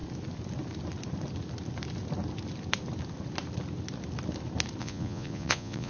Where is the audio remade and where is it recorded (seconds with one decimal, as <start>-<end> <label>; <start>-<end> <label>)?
0.0-4.8 recorded; 4.8-5.9 remade